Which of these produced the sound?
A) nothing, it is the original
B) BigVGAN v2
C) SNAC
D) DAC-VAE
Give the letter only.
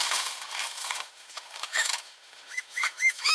D